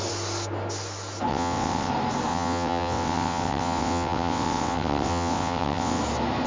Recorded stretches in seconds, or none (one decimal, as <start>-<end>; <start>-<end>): 0.0-1.3; 1.9-2.3; 6.0-6.5